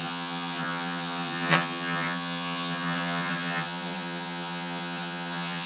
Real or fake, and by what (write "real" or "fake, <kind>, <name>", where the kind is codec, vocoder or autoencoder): fake, vocoder, HiFi-GAN